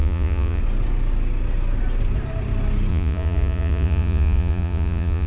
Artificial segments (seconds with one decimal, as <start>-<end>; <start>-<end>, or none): 0.0-0.6; 2.9-5.3